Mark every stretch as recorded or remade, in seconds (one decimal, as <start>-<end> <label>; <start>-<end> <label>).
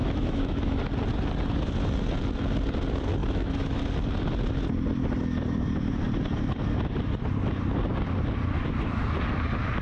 0.0-0.8 remade; 0.8-3.2 recorded; 3.2-3.8 remade; 3.8-9.8 recorded